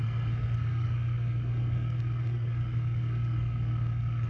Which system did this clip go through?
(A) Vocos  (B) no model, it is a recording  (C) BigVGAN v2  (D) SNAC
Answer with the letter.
D